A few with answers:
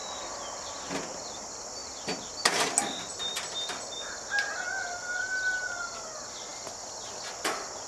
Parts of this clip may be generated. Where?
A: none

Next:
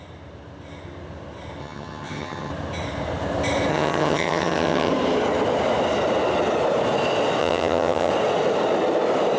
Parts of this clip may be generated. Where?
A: 1.6-2.5 (vocoder, HiFi-GAN); 3.7-4.9; 7.4-8.1